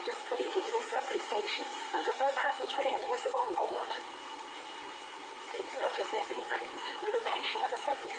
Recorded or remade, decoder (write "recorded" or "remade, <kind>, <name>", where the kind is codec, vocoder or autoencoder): remade, codec, SNAC